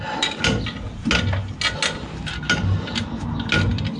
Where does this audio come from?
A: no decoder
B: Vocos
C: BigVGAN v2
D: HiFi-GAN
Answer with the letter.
A